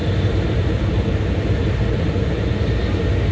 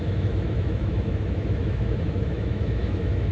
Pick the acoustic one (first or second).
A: first